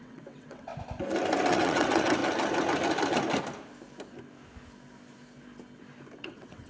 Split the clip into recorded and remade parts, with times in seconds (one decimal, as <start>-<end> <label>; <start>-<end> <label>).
0.0-0.7 remade; 0.7-1.5 recorded; 1.5-2.2 remade; 2.2-6.2 recorded; 6.2-6.7 remade